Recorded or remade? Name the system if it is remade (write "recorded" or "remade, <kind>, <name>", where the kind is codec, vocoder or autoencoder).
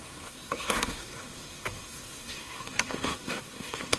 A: remade, codec, SNAC